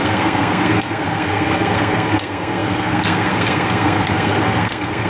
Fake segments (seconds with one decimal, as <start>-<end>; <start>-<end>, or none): 0.0-5.1